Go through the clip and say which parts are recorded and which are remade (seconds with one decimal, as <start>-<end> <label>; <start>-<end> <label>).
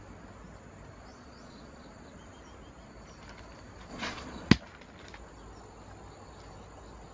0.0-1.1 recorded; 1.1-1.9 remade; 1.9-3.9 recorded; 3.9-4.5 remade; 4.5-7.1 recorded